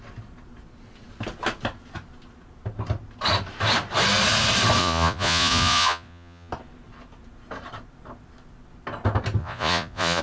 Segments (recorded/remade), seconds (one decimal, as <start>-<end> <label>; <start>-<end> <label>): 0.0-4.8 recorded; 4.8-6.5 remade; 6.5-9.4 recorded; 9.4-10.2 remade